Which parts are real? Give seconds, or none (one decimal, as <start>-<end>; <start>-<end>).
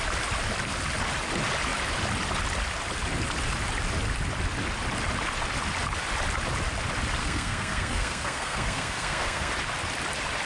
0.0-7.2; 9.5-10.5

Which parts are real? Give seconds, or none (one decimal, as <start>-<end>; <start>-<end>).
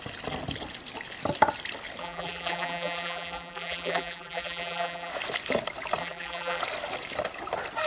0.0-2.0; 5.1-6.0; 6.6-7.9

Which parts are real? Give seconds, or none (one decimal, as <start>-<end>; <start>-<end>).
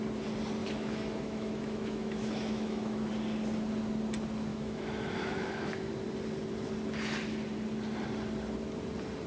0.0-0.6; 3.1-4.5; 5.9-9.3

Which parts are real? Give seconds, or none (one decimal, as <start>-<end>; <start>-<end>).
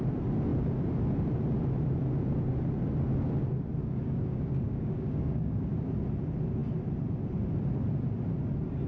0.0-3.8; 5.6-8.9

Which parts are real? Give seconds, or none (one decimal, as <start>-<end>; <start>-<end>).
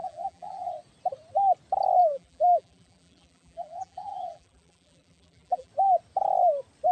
0.7-2.0; 5.7-6.9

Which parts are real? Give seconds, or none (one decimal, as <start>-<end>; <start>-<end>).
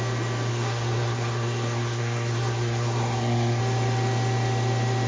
0.0-0.5; 3.6-5.1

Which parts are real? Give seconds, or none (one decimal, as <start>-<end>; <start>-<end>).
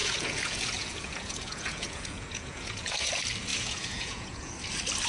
3.1-3.5; 4.5-5.1